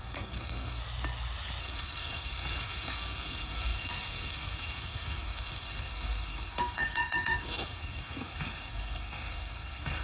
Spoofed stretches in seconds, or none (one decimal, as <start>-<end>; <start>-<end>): 0.0-0.8; 1.6-10.0

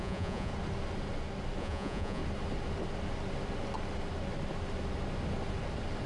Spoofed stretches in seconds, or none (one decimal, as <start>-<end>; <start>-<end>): 0.0-0.5; 1.6-2.2